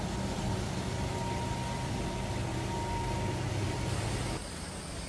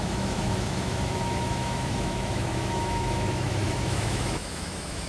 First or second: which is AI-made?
second